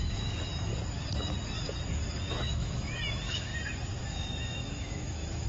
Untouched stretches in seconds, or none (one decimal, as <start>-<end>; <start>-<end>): 0.7-2.2; 3.5-4.0